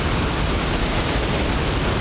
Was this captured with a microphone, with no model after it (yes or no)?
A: yes